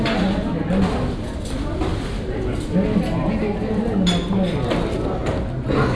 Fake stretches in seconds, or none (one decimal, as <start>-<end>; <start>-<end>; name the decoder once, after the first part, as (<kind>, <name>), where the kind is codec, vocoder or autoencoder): none